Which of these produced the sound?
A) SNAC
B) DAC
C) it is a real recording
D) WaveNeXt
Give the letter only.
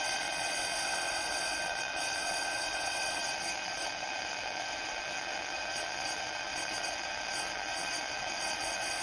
D